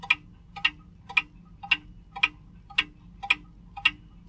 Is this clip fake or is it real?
real